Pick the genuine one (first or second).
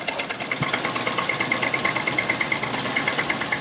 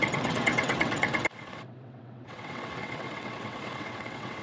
first